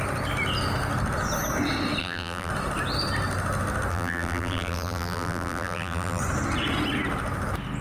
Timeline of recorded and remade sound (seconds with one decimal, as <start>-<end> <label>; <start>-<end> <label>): 0.0-2.0 recorded; 2.0-2.5 remade; 2.5-3.9 recorded; 3.9-6.2 remade; 6.2-7.8 recorded